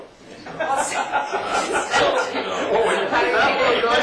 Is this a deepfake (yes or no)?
no